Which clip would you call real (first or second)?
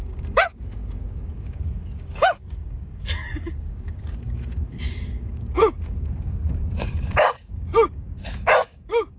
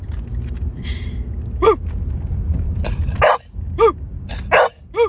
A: second